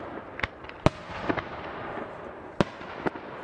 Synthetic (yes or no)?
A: no